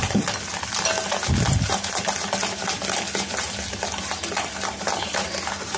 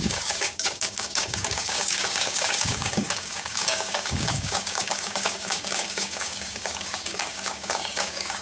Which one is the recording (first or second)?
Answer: first